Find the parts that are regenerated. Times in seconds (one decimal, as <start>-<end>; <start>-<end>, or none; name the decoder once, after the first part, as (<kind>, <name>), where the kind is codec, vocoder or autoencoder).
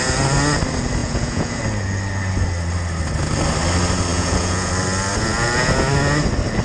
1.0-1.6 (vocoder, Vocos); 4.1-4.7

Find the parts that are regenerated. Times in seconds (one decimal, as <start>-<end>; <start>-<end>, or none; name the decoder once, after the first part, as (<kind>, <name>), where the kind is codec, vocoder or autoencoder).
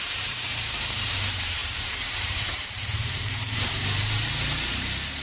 0.0-5.2 (vocoder, BigVGAN v2)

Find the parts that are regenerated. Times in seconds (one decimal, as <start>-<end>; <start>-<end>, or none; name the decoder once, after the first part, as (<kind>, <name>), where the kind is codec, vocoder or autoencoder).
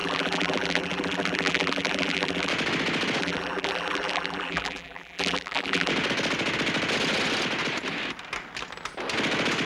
0.0-2.5 (vocoder, BigVGAN v2); 3.2-5.9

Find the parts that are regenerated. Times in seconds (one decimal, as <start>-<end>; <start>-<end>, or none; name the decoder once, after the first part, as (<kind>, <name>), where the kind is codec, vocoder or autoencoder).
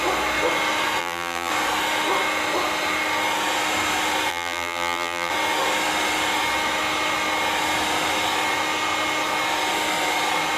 1.0-1.5 (vocoder, BigVGAN v2); 4.3-5.3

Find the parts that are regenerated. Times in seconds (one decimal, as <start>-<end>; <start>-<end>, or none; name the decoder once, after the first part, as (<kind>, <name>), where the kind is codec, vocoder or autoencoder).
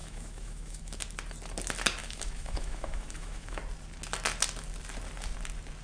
0.0-1.0 (autoencoder, DAC-VAE); 2.0-3.6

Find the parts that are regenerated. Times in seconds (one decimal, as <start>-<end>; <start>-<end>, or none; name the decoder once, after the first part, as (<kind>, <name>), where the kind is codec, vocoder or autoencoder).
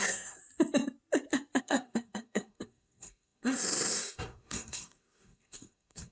0.0-0.4 (codec, SNAC); 1.6-6.1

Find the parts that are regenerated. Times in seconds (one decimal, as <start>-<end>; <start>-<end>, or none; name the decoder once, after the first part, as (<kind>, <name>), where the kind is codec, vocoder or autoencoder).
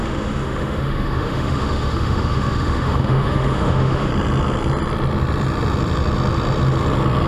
0.0-4.1 (autoencoder, DAC-VAE)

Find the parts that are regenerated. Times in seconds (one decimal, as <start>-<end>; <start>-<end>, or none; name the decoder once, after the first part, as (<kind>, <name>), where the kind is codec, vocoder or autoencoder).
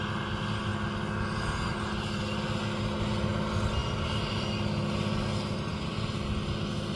none